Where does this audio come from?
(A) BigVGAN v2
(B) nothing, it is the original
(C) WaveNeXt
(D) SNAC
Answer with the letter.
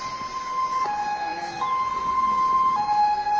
B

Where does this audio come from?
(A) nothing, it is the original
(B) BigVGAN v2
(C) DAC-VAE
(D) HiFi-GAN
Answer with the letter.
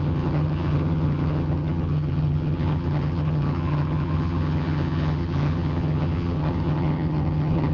D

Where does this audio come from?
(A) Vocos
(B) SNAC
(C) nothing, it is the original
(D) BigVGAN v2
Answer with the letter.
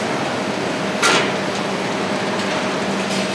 C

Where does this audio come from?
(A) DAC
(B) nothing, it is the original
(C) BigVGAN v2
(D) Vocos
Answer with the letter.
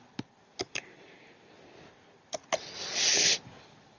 B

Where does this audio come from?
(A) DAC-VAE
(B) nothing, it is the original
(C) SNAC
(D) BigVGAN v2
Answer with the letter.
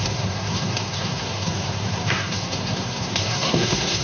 C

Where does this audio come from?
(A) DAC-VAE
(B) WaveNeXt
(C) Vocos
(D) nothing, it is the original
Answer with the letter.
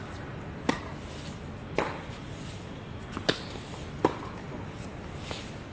D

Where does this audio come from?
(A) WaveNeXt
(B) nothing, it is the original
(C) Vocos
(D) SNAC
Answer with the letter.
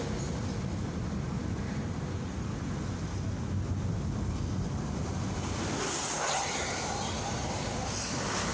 B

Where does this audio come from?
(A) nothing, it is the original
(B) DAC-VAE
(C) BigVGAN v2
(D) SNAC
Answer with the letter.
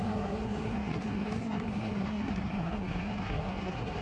D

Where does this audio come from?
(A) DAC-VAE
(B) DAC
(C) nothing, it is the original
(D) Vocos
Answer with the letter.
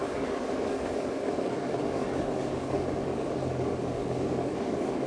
B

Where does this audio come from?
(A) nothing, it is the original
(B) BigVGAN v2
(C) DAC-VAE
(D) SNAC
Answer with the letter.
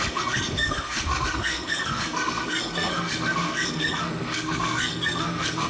D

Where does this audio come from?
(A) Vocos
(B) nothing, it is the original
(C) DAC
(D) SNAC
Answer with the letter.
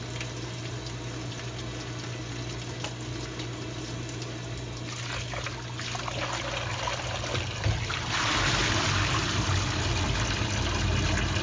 B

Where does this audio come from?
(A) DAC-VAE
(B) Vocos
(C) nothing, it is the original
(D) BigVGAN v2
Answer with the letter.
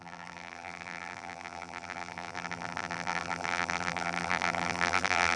D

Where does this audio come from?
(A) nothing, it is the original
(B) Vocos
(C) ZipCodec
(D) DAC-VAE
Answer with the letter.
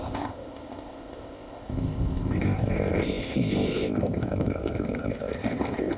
C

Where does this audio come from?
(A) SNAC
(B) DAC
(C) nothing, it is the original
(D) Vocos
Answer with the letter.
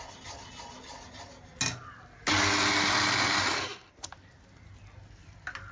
C